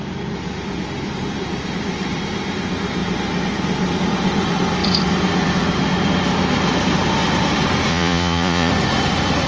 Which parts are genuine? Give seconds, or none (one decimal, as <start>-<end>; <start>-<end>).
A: 0.0-7.9; 8.7-9.5